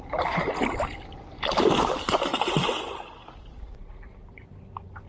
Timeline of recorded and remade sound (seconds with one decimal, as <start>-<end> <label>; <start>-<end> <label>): 0.0-2.3 recorded; 2.3-4.4 remade; 4.4-5.1 recorded